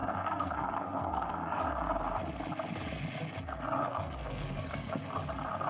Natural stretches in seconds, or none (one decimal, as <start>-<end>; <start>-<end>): 1.6-3.8; 5.1-5.7